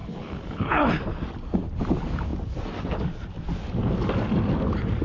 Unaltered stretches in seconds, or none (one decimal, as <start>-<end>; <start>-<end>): 0.9-5.0